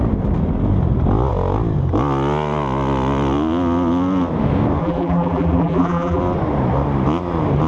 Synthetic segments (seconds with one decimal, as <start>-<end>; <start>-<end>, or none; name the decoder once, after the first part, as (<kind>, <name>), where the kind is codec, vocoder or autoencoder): 4.8-6.2 (vocoder, BigVGAN v2)